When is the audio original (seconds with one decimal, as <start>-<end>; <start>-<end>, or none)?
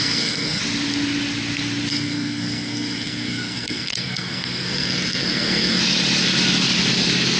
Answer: 0.6-1.9; 5.8-7.4